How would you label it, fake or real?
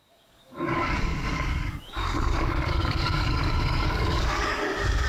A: fake